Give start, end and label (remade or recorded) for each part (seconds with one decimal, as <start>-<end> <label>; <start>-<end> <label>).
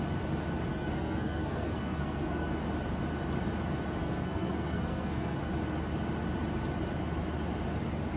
0.0-0.7 recorded; 0.7-2.5 remade; 2.5-4.0 recorded; 4.0-5.4 remade; 5.4-8.2 recorded